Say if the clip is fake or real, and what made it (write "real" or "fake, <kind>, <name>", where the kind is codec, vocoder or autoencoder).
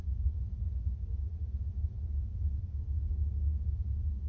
real